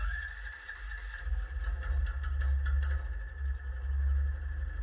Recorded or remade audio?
recorded